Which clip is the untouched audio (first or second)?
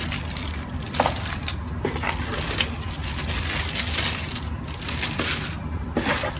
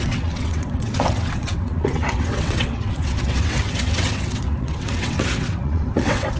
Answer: first